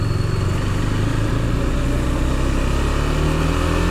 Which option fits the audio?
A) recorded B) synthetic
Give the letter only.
A